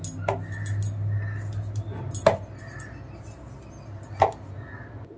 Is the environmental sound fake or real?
real